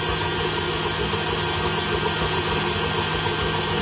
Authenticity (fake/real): real